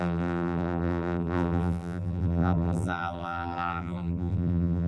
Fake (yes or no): yes